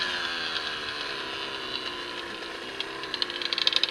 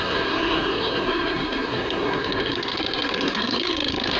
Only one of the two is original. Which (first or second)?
first